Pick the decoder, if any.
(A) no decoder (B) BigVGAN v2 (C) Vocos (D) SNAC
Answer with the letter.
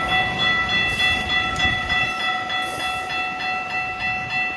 A